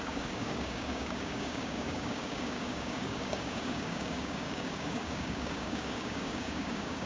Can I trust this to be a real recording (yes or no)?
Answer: no